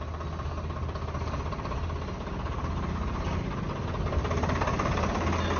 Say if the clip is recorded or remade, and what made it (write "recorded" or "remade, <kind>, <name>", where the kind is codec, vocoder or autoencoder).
recorded